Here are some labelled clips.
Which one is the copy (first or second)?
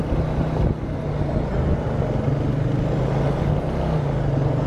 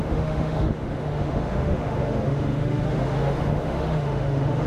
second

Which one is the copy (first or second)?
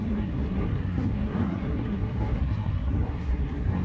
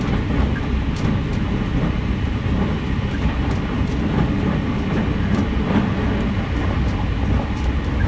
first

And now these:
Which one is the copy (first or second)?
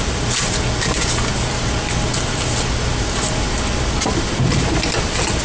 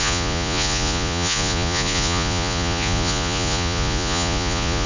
second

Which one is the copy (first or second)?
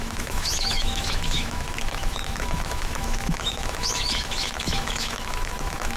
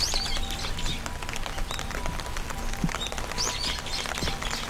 first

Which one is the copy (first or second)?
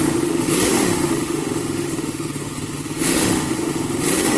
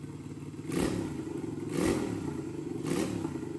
first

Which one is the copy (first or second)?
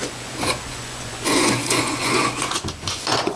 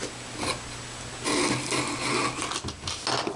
first